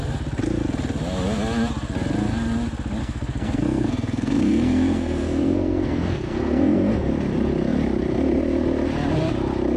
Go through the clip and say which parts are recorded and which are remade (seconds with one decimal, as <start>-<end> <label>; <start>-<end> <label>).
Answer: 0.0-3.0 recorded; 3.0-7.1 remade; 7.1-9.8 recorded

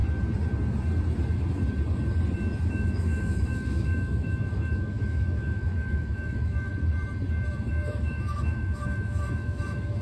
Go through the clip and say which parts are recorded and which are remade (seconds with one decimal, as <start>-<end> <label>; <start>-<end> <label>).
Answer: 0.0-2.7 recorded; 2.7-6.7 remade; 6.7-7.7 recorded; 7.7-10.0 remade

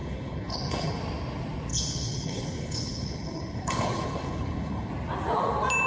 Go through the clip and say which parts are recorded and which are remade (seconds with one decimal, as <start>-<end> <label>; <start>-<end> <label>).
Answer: 0.0-1.0 remade; 1.0-1.7 recorded; 1.7-4.9 remade; 4.9-5.9 recorded

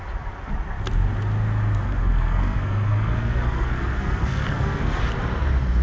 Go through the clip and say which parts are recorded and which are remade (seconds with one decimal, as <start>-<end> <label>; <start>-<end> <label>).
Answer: 0.0-2.0 recorded; 2.0-5.0 remade; 5.0-5.8 recorded

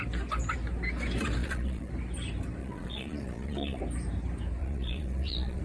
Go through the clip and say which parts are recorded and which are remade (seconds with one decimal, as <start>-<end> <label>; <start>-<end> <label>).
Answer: 0.0-1.4 recorded; 1.4-1.9 remade; 1.9-2.6 recorded; 2.6-3.8 remade; 3.8-4.6 recorded; 4.6-5.6 remade

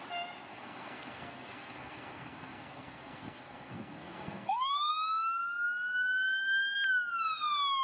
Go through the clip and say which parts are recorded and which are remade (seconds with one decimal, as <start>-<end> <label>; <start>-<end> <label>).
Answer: 0.0-0.5 recorded; 0.5-4.9 remade; 4.9-7.8 recorded